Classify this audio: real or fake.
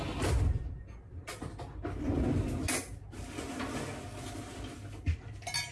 real